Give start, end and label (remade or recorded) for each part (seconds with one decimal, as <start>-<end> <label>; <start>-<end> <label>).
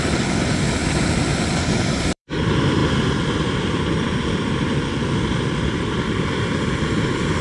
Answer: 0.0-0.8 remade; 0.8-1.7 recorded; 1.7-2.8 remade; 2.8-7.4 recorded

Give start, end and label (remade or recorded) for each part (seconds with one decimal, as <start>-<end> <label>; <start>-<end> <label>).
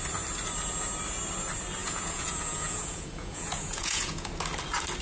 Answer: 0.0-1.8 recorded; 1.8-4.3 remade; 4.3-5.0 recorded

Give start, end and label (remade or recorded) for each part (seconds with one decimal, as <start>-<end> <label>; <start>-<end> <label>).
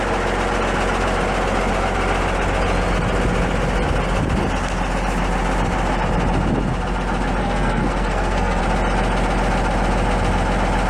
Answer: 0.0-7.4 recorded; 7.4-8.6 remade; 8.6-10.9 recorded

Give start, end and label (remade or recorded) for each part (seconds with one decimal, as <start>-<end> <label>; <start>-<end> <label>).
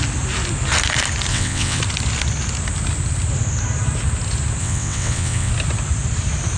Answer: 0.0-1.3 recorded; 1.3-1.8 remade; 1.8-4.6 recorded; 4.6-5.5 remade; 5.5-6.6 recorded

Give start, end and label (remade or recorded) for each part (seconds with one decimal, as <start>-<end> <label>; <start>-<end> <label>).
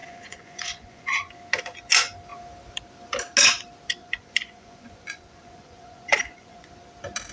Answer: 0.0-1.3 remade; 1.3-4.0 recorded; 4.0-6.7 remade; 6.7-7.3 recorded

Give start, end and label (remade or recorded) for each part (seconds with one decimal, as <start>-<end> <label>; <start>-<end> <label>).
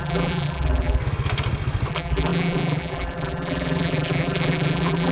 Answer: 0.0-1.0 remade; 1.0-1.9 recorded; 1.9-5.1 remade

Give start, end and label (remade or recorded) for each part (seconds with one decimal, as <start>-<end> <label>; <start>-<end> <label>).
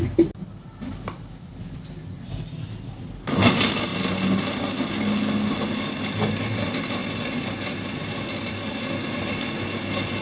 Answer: 0.0-10.2 recorded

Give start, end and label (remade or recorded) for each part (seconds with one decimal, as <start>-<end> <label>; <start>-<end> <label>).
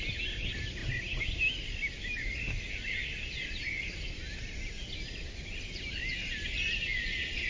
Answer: 0.0-7.5 recorded